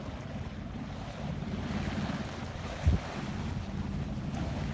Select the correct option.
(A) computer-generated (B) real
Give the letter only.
B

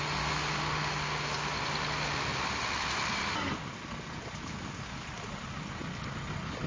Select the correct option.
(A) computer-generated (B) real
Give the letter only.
B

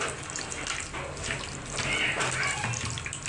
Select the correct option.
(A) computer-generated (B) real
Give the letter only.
B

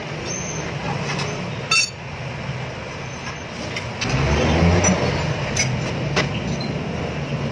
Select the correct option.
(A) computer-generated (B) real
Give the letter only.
B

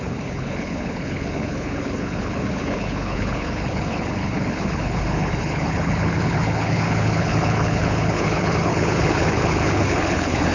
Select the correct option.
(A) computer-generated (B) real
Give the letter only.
A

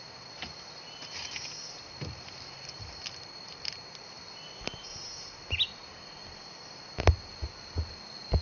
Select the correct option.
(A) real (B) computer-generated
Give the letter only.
A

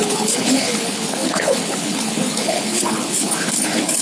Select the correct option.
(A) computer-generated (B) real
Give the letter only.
A